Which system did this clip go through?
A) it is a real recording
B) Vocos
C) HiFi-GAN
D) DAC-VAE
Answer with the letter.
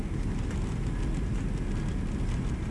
A